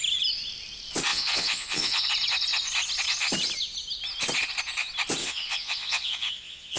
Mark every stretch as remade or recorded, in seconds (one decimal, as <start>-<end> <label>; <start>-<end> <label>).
0.0-1.1 recorded; 1.1-2.1 remade; 2.1-5.2 recorded; 5.2-6.8 remade